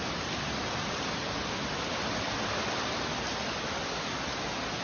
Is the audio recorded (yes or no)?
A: no